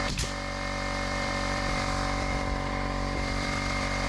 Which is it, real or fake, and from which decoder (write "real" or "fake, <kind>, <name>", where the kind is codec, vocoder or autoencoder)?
fake, vocoder, BigVGAN v2